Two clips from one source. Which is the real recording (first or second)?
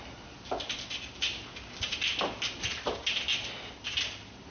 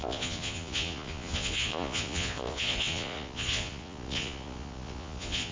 first